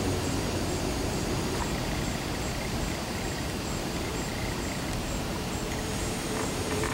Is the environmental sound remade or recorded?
remade